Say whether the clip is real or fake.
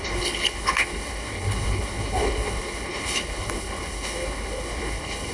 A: fake